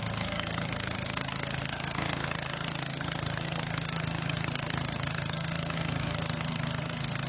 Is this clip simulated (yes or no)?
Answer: yes